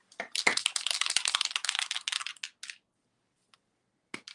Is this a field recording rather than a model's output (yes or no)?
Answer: yes